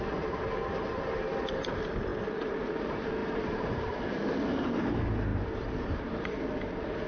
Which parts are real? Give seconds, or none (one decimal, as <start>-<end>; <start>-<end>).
0.0-3.2; 4.1-5.3; 6.3-7.1